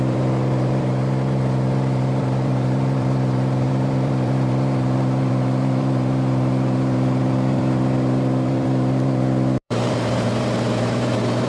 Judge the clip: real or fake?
fake